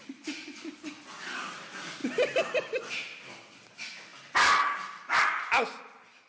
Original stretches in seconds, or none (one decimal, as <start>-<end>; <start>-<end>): 0.6-6.3